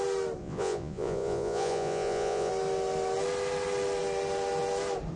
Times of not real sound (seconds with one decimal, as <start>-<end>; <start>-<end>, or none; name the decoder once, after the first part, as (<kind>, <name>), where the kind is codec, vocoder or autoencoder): 0.4-2.5 (vocoder, Vocos)